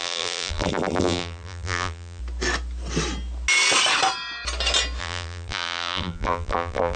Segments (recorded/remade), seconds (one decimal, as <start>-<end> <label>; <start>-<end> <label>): 0.0-2.2 remade; 2.2-5.0 recorded; 5.0-7.0 remade